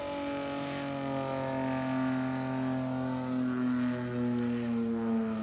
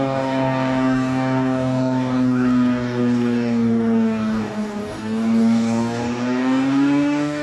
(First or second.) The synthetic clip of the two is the second